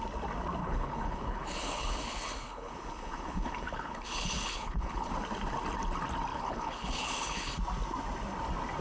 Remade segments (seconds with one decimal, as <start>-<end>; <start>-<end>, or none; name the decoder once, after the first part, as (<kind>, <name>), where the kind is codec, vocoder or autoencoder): 0.6-5.1 (codec, HILCodec); 6.3-7.5